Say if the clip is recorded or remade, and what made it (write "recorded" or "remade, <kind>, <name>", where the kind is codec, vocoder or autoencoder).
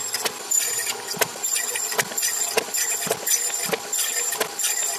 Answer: recorded